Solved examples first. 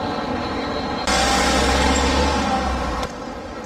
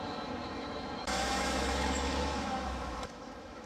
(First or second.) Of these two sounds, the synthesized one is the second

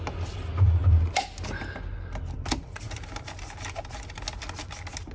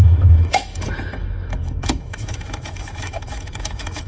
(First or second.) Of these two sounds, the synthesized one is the second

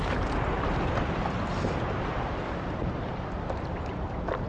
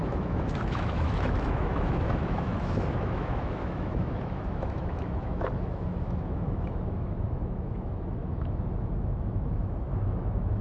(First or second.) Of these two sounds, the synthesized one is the second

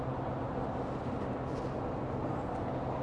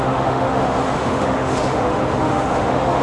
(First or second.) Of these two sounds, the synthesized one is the second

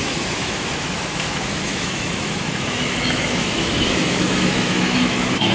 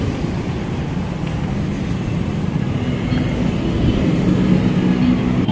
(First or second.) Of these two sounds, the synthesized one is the first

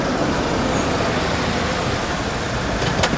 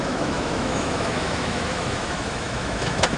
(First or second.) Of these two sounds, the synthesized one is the second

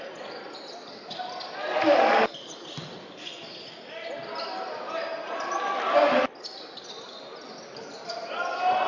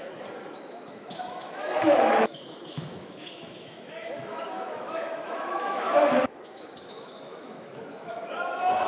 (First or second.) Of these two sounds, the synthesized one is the second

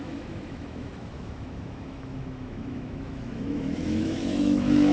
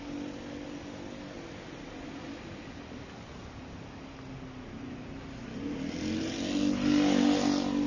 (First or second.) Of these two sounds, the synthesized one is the first